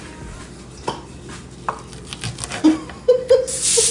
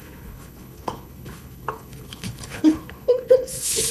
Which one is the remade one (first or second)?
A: second